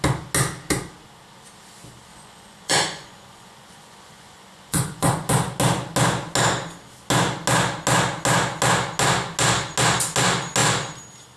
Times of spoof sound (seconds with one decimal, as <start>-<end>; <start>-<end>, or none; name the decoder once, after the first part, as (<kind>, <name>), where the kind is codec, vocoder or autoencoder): 2.1-5.3 (vocoder, Vocos)